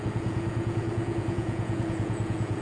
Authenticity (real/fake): fake